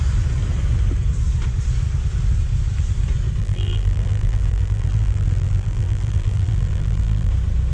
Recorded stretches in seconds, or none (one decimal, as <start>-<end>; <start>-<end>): 0.0-3.4; 7.3-7.7